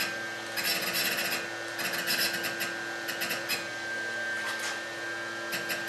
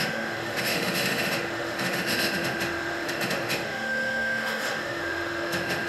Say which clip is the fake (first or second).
second